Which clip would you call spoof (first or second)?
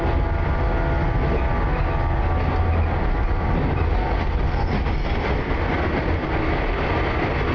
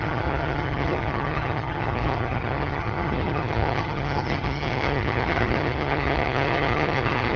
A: second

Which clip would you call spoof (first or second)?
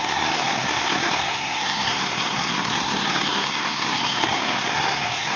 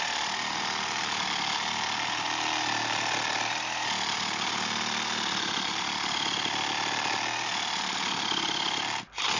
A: first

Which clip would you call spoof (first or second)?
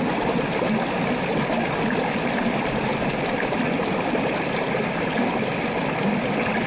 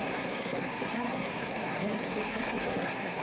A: second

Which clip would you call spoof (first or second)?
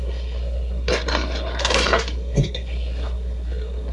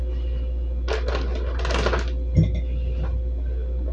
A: first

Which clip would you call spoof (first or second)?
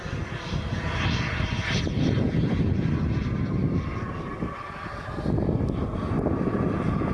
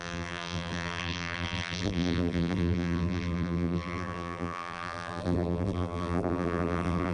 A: second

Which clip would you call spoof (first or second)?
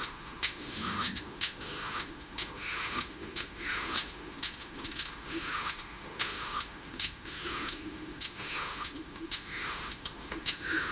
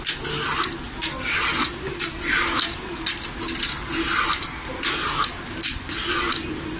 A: first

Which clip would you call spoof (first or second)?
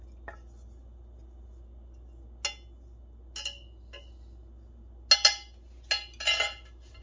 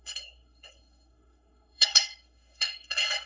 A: second